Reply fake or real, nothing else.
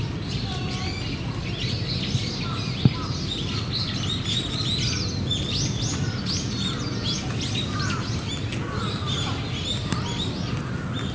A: real